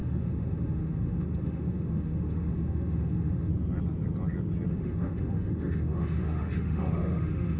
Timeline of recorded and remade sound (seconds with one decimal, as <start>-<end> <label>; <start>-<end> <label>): 0.0-3.5 remade; 3.5-4.7 recorded; 4.7-7.6 remade